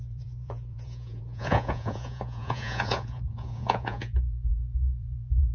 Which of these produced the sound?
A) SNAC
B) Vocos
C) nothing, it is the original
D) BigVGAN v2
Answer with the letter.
B